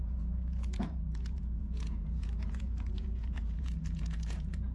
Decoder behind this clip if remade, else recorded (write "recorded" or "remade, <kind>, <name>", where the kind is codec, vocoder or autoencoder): remade, vocoder, Vocos